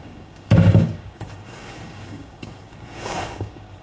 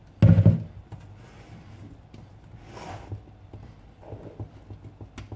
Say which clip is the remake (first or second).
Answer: first